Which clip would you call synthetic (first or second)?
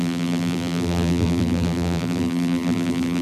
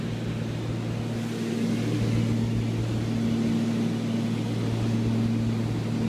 first